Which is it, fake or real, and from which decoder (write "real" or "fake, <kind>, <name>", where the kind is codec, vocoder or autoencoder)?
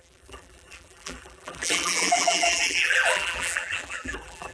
fake, vocoder, BigVGAN v2